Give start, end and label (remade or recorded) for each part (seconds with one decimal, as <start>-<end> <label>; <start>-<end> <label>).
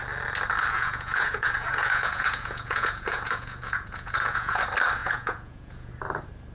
0.0-0.7 recorded; 0.7-4.6 remade; 4.6-5.0 recorded; 5.0-5.9 remade; 5.9-6.5 recorded